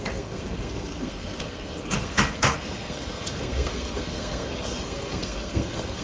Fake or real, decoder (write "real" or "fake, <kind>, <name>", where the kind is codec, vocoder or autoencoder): fake, codec, SNAC